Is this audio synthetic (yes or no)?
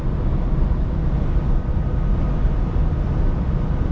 no